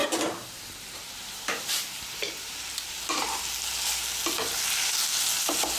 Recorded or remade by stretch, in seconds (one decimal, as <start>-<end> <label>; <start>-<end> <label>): 0.0-3.4 remade; 3.4-5.8 recorded